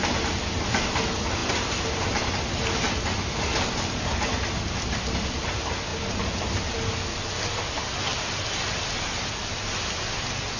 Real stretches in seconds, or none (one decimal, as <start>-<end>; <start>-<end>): 0.0-10.6